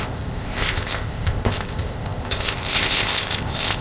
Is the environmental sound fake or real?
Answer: fake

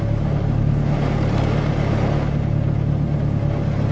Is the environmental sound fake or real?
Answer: real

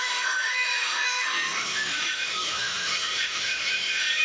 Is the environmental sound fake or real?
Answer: fake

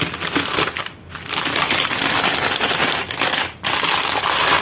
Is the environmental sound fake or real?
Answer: fake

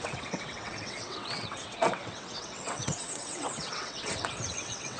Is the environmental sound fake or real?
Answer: fake